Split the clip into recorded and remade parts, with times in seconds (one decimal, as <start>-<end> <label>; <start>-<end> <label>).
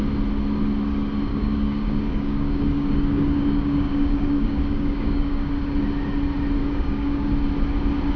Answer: 0.0-1.3 recorded; 1.3-5.5 remade; 5.5-6.6 recorded; 6.6-7.3 remade; 7.3-8.2 recorded